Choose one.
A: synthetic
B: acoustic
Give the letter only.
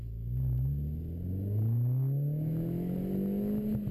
B